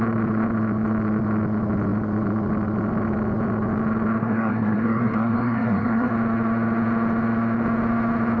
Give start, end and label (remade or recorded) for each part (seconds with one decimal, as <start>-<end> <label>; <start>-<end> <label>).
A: 0.0-4.2 recorded; 4.2-6.1 remade; 6.1-8.4 recorded